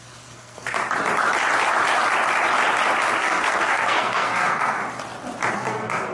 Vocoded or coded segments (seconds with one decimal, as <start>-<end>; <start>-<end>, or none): 0.0-0.8; 3.2-4.8; 5.5-6.1